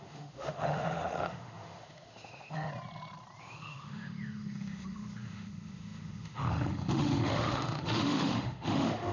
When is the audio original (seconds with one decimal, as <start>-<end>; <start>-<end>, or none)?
2.7-3.4